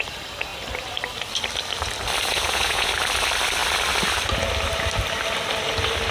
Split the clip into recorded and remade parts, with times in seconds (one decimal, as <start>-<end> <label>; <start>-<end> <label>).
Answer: 0.0-2.3 recorded; 2.3-2.9 remade; 2.9-6.1 recorded